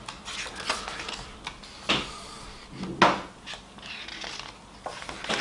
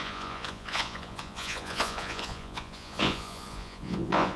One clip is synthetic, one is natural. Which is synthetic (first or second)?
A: second